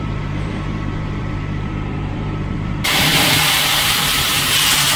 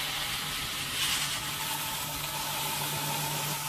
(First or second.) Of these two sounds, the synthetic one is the first